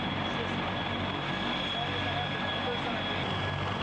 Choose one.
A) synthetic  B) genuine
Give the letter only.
B